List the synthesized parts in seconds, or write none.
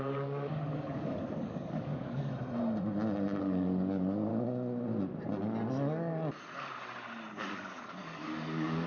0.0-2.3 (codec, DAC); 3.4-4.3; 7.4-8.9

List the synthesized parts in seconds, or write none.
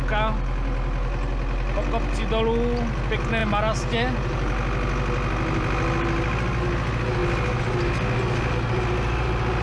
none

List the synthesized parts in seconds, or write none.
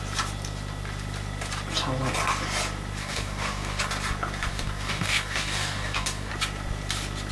3.0-3.8 (codec, DAC); 4.5-6.3